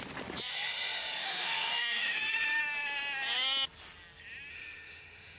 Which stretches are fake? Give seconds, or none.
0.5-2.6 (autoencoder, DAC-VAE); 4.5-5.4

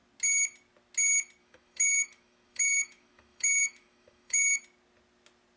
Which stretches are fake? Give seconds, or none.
1.4-4.6 (autoencoder, DAC-VAE)

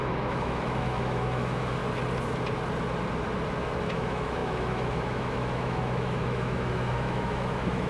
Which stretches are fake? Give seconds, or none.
0.0-1.8 (autoencoder, DAC-VAE); 3.8-7.9

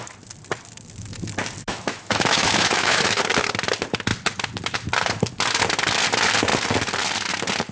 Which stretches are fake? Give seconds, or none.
1.6-3.2 (autoencoder, DAC-VAE)

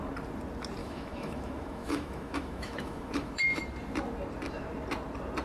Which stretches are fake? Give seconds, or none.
0.8-3.6 (autoencoder, DAC-VAE)

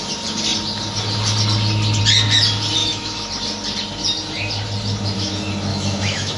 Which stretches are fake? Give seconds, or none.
2.8-3.3 (autoencoder, DAC-VAE); 5.7-6.4

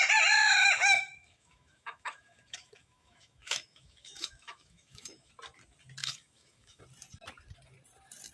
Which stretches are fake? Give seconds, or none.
0.4-5.3 (autoencoder, DAC-VAE); 6.0-6.8

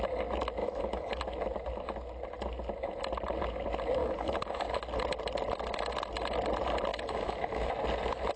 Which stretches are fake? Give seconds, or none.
0.6-1.2 (autoencoder, DAC-VAE); 4.0-4.6; 6.9-7.7